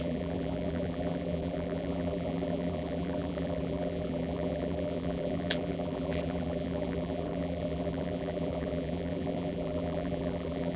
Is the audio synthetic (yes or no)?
yes